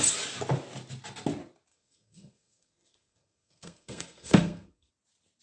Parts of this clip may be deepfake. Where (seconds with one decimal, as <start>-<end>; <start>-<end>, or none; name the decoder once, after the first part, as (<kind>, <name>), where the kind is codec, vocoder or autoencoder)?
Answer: 1.7-4.9 (codec, SNAC)